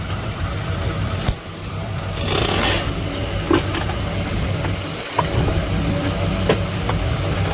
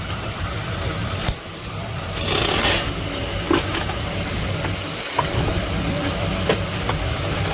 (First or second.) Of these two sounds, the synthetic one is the second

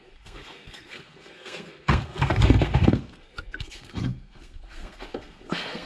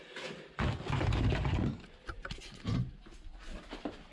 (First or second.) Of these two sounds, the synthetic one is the first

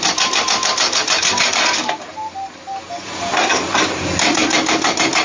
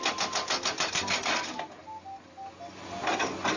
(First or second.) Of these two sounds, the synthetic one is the first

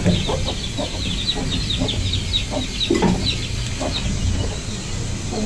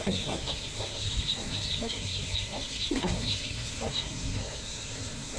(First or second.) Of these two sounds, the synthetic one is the second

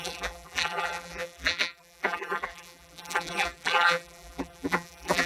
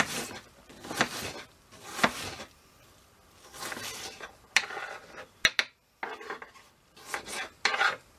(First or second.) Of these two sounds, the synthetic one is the first